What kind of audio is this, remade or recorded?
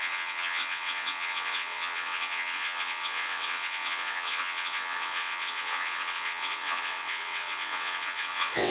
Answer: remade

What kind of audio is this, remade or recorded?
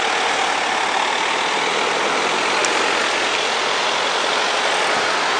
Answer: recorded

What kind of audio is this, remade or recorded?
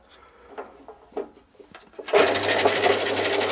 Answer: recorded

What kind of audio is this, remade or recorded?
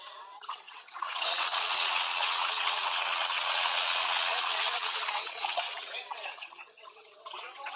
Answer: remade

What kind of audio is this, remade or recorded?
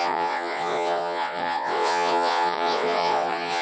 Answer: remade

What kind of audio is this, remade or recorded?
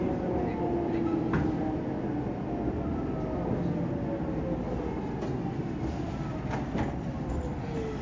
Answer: recorded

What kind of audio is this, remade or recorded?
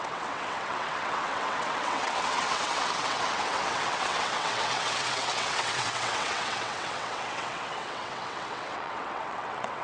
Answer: remade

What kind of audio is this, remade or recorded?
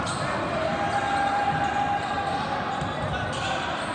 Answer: recorded